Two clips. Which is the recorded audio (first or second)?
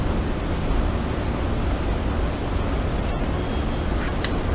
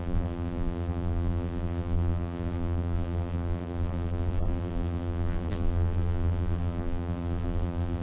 first